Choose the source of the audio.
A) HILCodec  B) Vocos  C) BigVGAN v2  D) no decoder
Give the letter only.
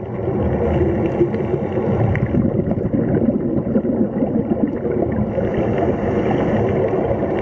D